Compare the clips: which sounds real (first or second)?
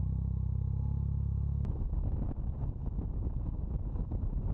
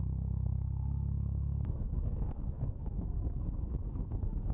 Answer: first